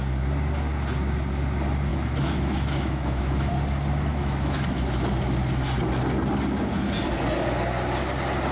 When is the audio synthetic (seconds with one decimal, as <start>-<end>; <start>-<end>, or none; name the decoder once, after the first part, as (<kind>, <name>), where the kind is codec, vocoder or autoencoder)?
1.9-3.5 (autoencoder, DAC-VAE); 4.1-4.8